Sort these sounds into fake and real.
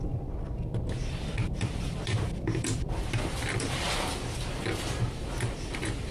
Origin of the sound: fake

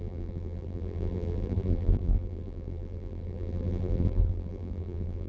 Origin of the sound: fake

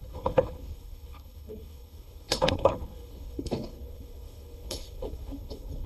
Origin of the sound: fake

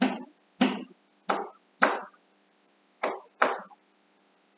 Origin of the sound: real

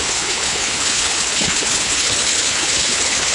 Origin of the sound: fake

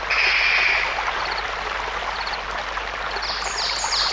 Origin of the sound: real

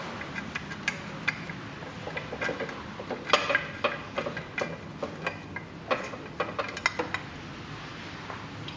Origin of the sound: real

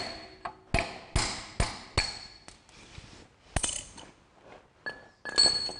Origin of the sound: real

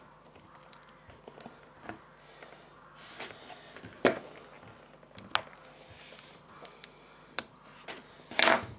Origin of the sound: real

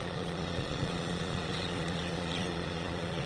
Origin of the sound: fake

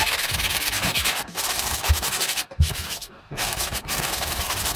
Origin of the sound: fake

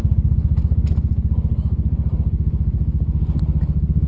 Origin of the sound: real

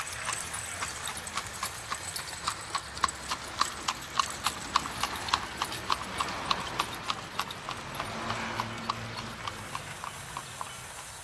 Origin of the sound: real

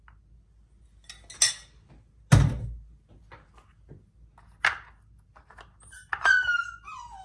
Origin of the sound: real